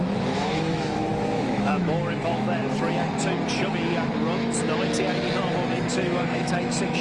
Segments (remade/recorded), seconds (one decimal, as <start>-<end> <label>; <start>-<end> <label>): 0.0-2.6 remade; 2.6-5.9 recorded; 5.9-7.0 remade